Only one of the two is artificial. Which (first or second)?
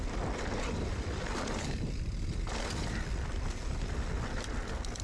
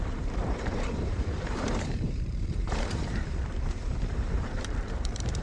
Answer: second